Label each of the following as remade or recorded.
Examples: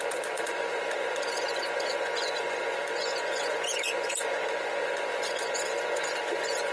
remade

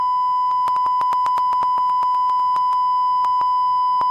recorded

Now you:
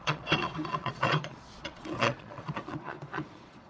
remade